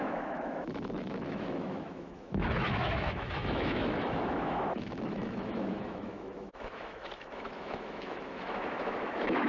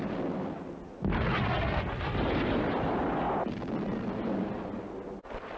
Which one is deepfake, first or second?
first